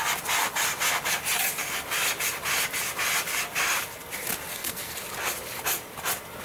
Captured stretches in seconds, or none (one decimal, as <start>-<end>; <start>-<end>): 0.0-4.5; 5.0-6.4

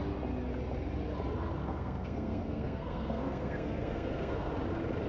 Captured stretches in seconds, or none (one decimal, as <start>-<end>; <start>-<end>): 0.0-1.6; 4.5-5.1